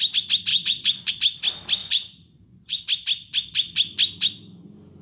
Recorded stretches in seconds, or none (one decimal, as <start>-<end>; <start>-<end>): 0.0-0.5; 1.1-1.8; 2.8-5.0